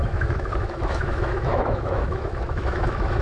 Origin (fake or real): fake